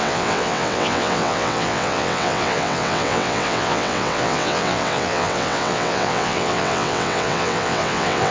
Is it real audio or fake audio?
fake